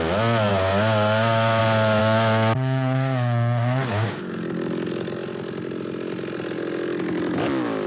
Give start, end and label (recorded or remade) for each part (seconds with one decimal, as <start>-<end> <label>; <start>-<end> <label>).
0.0-0.5 recorded; 0.5-1.6 remade; 1.6-2.0 recorded; 2.0-4.4 remade; 4.4-7.9 recorded